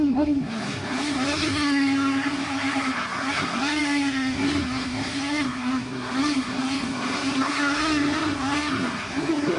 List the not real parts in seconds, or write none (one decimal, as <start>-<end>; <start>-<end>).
0.0-9.6

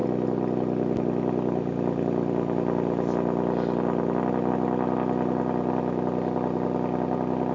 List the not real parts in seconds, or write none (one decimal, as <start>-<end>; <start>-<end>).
none

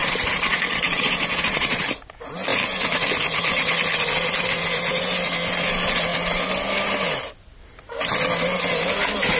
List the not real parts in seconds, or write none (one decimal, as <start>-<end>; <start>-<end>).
0.0-1.8

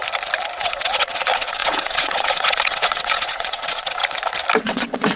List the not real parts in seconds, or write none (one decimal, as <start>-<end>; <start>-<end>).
0.6-4.0; 4.6-5.2